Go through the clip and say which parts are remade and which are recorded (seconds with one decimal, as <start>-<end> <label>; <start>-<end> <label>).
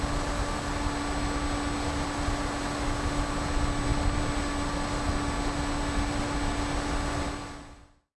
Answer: 0.0-8.2 recorded